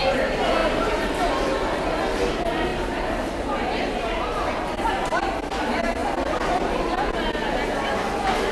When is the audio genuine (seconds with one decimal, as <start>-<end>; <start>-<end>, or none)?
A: 0.0-0.6; 1.3-2.7; 4.5-8.5